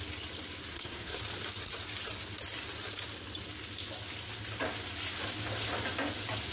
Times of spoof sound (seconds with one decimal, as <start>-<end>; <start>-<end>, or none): 0.7-1.2